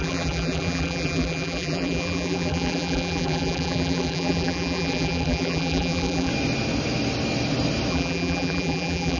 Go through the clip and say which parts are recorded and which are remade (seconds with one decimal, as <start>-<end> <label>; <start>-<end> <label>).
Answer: 0.0-6.3 remade; 6.3-7.9 recorded; 7.9-9.2 remade